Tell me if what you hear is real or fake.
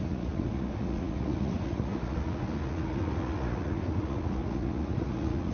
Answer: fake